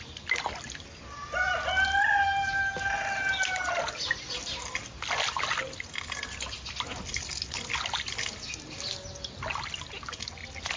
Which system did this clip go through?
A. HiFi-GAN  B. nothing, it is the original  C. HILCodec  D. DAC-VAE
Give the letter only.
B